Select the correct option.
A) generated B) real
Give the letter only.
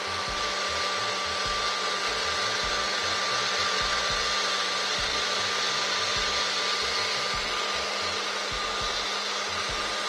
B